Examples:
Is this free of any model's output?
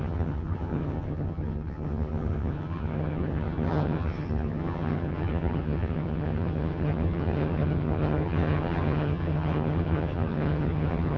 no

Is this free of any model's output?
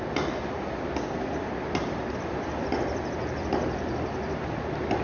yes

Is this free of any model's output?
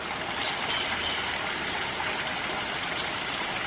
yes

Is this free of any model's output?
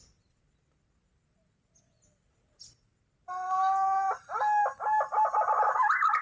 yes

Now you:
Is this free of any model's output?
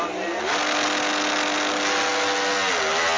yes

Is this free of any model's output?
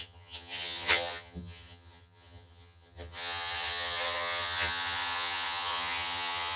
no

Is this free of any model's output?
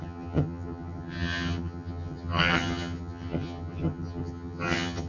no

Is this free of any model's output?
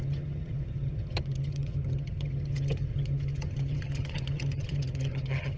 no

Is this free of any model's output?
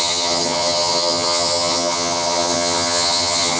no